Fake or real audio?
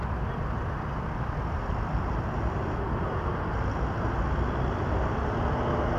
real